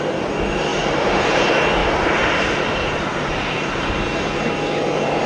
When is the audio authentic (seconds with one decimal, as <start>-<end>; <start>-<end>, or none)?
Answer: 0.0-0.7; 1.4-1.8; 4.0-5.3